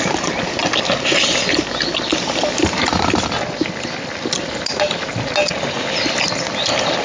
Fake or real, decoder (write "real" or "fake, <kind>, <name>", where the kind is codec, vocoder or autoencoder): real